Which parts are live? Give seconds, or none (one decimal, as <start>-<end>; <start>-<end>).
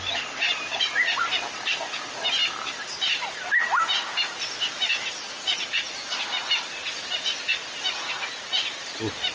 0.0-0.7; 1.2-9.3